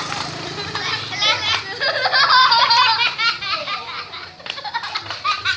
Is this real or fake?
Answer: real